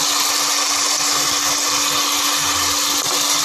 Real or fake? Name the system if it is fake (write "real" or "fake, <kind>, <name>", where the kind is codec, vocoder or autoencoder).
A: real